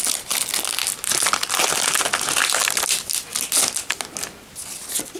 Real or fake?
real